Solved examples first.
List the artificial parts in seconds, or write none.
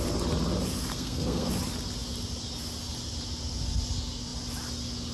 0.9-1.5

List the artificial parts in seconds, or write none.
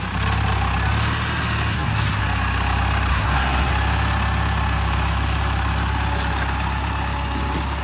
1.7-2.2; 3.1-3.7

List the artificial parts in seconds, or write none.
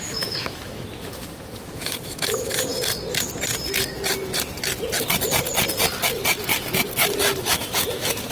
0.0-2.7; 7.4-8.3